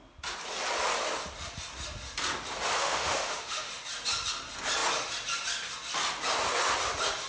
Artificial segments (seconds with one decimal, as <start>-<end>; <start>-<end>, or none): 2.8-3.7